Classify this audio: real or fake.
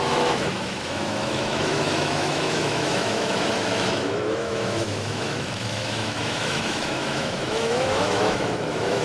fake